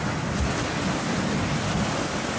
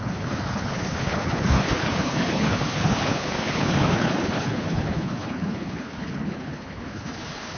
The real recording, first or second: first